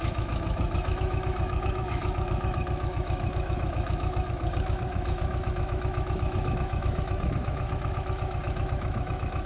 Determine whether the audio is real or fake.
fake